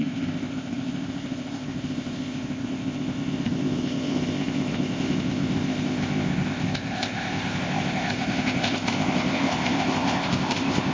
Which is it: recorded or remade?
remade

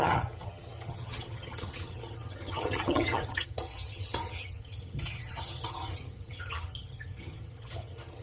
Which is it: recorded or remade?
remade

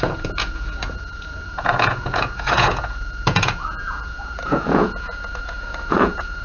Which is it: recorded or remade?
remade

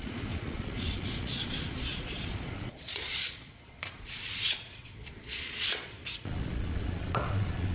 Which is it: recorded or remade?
remade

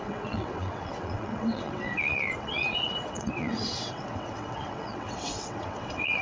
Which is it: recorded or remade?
remade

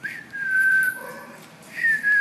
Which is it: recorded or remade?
remade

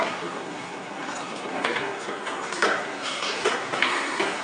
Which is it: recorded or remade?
remade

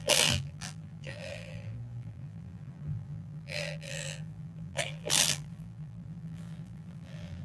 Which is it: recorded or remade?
remade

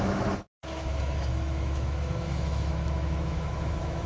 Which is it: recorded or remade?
remade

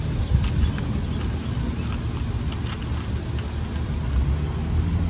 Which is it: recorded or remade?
recorded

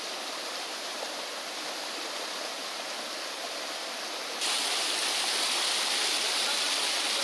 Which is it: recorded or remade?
recorded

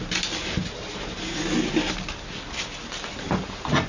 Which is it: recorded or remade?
recorded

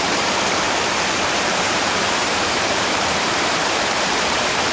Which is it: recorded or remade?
remade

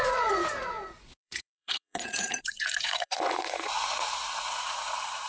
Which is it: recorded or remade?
remade